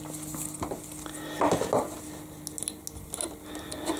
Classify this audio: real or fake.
real